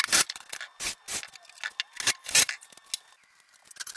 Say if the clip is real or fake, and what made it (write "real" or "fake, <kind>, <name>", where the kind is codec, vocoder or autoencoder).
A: real